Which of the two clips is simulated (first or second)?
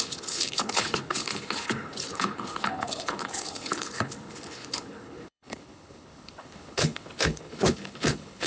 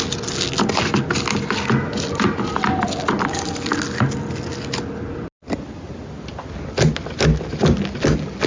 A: first